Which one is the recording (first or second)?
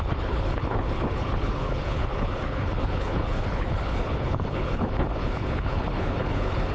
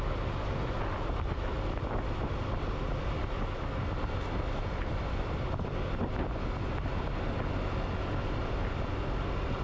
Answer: second